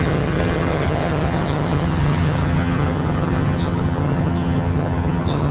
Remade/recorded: remade